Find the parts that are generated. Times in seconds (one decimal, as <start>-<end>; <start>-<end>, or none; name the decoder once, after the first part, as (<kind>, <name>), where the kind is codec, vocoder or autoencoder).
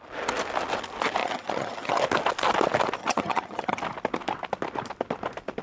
1.2-2.0 (vocoder, HiFi-GAN); 3.0-3.8